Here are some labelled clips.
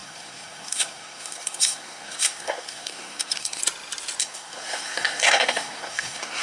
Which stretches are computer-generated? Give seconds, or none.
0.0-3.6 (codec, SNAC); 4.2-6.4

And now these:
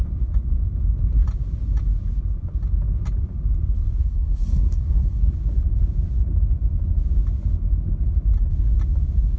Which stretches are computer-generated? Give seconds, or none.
4.0-5.2 (codec, SNAC)

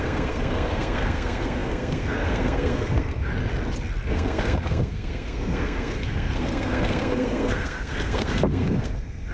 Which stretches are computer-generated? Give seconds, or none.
0.0-3.3 (codec, SNAC); 4.1-9.3

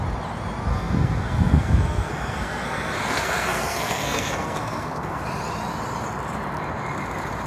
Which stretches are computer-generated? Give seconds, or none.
0.7-5.2 (codec, SNAC)

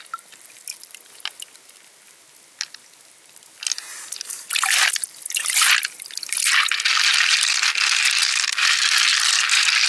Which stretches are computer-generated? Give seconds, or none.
none

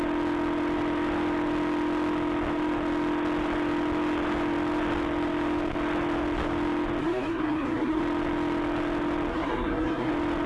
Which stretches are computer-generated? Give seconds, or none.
7.0-8.0 (codec, SNAC); 9.3-10.1

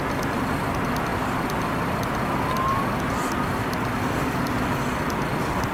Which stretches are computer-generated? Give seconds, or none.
none

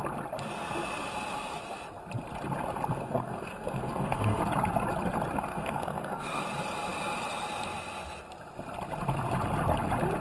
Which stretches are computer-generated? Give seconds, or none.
2.9-4.4 (codec, SNAC); 5.5-6.4